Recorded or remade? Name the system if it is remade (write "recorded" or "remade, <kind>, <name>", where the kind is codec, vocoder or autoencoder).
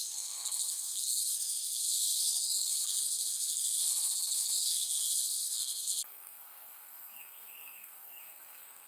remade, codec, SNAC